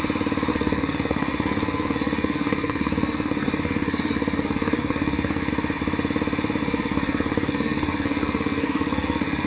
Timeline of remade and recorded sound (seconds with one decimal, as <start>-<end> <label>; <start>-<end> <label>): 0.0-0.5 recorded; 0.5-5.5 remade; 5.5-6.6 recorded; 6.6-9.5 remade